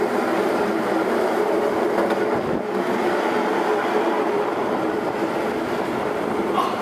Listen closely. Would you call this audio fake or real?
fake